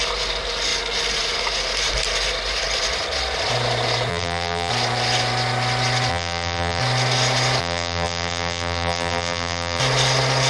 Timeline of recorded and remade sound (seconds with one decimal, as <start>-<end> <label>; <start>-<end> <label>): 0.0-4.1 recorded; 4.1-4.7 remade; 4.7-6.1 recorded; 6.1-6.8 remade; 6.8-7.6 recorded; 7.6-9.8 remade; 9.8-10.5 recorded